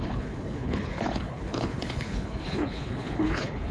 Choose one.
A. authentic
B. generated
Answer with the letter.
B